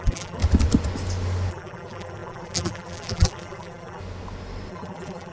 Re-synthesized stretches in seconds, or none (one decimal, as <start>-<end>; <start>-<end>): 0.0-0.4; 1.5-4.0; 4.7-5.3